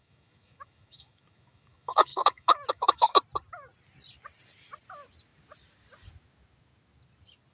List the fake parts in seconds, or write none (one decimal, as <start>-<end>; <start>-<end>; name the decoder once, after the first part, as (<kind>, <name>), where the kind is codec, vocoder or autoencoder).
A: 0.0-3.2 (autoencoder, DAC-VAE)

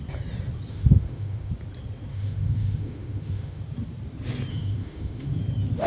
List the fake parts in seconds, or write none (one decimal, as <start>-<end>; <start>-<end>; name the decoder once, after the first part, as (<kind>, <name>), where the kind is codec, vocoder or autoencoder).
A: 0.7-1.5 (autoencoder, DAC-VAE); 2.1-3.6; 4.5-5.4

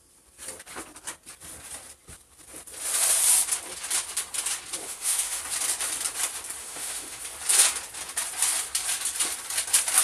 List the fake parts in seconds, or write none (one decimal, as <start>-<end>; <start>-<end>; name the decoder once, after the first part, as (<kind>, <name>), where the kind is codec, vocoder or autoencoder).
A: 4.8-5.4 (autoencoder, DAC-VAE); 6.6-7.2

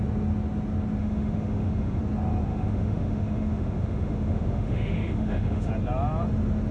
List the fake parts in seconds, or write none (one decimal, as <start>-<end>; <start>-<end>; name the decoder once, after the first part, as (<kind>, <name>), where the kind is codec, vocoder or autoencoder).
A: 1.0-2.0 (autoencoder, DAC-VAE); 2.5-5.7

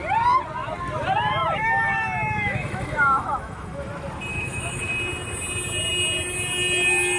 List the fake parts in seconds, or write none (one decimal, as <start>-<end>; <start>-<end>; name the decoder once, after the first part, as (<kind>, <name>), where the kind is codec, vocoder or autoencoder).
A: 1.4-3.9 (autoencoder, DAC-VAE); 4.3-4.9

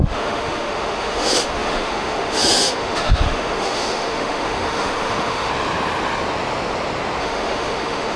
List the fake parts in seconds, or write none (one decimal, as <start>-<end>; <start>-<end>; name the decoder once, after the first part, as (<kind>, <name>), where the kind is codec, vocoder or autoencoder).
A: 0.0-5.5 (autoencoder, DAC-VAE); 7.2-8.2

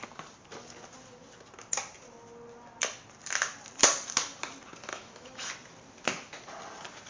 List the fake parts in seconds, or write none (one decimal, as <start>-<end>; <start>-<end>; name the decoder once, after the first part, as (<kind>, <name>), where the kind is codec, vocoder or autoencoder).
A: 4.9-5.5 (autoencoder, DAC-VAE)

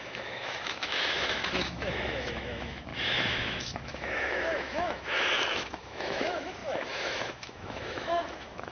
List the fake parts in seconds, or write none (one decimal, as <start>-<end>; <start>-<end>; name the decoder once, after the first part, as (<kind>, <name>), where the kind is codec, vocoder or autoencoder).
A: 0.0-8.7 (autoencoder, DAC-VAE)